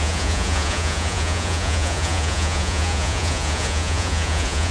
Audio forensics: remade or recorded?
remade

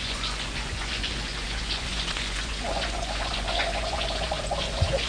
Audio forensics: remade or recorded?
remade